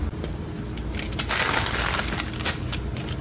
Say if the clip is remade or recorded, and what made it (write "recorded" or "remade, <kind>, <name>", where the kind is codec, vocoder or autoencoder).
recorded